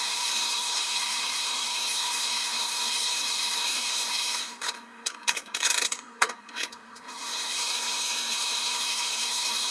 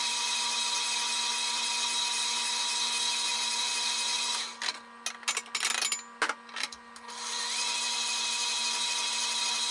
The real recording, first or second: second